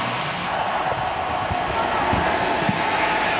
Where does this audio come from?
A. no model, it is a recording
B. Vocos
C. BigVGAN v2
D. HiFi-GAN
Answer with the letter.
A